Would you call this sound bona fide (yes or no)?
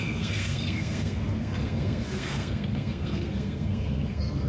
no